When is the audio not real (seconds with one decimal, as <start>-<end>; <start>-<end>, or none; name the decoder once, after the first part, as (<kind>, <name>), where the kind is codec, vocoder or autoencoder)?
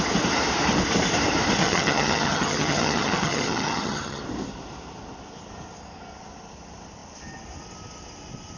1.6-4.2 (vocoder, HiFi-GAN)